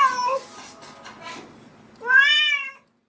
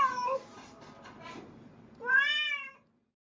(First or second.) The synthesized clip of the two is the second